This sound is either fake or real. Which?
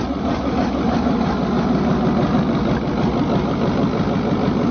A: real